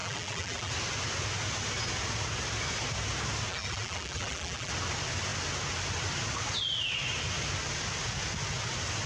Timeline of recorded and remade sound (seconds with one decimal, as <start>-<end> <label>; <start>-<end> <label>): 0.0-0.7 remade; 0.7-3.5 recorded; 3.5-4.7 remade; 4.7-9.1 recorded

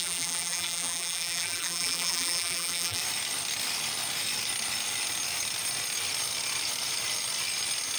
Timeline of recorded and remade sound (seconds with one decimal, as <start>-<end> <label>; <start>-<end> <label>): 0.0-3.0 remade; 3.0-8.0 recorded

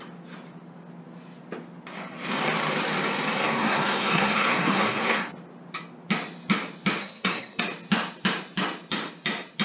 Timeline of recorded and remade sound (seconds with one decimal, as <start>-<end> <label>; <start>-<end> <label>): 0.0-3.4 recorded; 3.4-5.3 remade; 5.3-7.0 recorded; 7.0-7.6 remade; 7.6-9.6 recorded